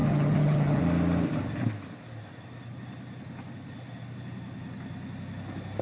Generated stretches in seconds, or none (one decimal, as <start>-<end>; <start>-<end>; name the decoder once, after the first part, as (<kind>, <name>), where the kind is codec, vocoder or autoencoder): 0.0-0.8 (vocoder, HiFi-GAN)